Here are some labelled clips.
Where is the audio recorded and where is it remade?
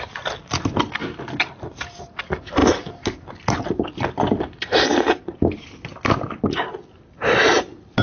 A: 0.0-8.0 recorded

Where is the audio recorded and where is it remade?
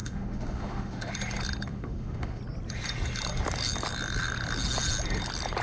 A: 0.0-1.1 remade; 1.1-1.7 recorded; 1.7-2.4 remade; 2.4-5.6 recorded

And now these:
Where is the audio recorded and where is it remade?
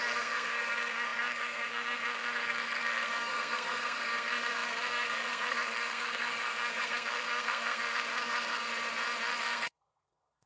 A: 0.0-8.7 remade; 8.7-9.4 recorded; 9.4-10.5 remade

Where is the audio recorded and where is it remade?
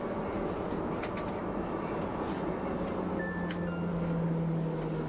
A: 0.0-5.1 recorded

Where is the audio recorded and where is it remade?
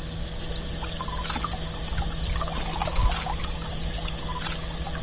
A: 0.0-5.0 recorded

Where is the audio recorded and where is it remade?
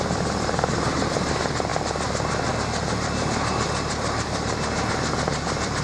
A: 0.0-5.8 recorded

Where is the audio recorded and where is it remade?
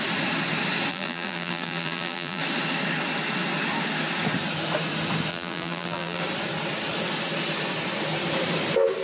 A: 0.0-0.9 recorded; 0.9-2.4 remade; 2.4-5.3 recorded; 5.3-6.2 remade; 6.2-9.0 recorded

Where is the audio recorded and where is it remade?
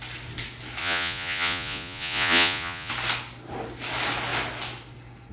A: 0.0-0.8 recorded; 0.8-2.9 remade; 2.9-5.3 recorded